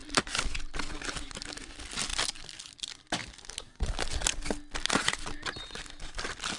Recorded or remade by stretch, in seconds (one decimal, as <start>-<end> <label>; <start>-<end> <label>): 0.0-6.6 recorded